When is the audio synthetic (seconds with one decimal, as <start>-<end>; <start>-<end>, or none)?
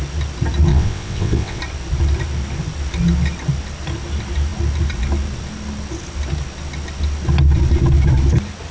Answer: 0.7-1.6